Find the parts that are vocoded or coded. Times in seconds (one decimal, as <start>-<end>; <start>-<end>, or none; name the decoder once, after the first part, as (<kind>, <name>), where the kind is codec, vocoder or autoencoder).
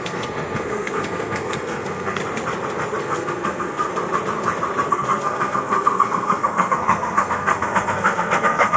0.0-2.2 (codec, SNAC); 3.0-3.9; 4.9-8.8